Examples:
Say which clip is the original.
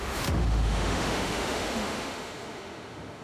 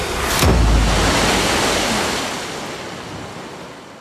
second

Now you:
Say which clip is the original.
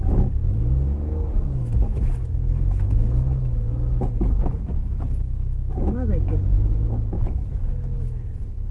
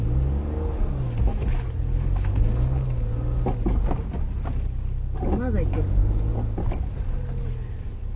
second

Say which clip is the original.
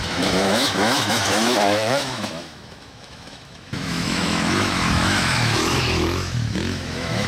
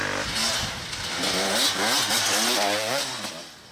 second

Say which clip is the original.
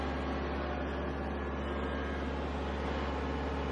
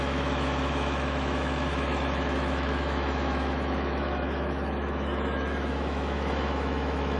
first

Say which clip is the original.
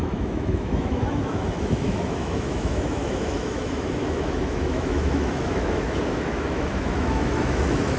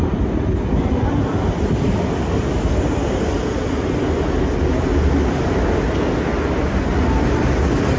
second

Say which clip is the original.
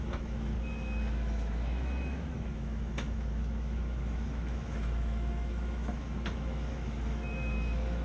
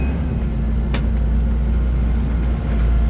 second